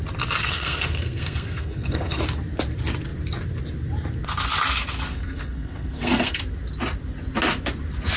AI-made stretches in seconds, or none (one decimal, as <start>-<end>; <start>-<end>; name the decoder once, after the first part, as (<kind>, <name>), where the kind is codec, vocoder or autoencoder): 0.4-2.2 (codec, SNAC); 5.1-6.4